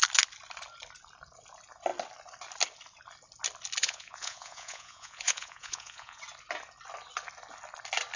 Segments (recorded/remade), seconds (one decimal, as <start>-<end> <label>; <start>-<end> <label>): 0.0-3.8 recorded; 3.8-6.2 remade; 6.2-8.2 recorded